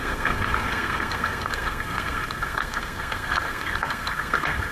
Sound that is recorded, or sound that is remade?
remade